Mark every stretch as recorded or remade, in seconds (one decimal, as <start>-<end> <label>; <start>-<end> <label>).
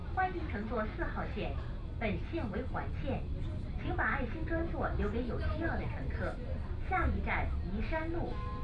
0.0-8.6 recorded